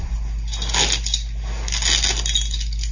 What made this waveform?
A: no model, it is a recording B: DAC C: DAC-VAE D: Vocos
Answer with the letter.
A